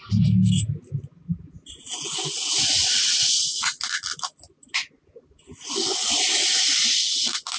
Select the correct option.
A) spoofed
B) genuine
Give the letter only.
B